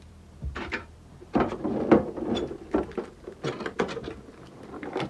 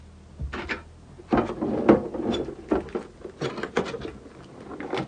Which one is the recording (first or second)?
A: second